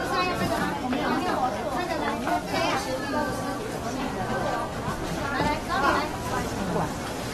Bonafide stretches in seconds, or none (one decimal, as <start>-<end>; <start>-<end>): 0.0-7.3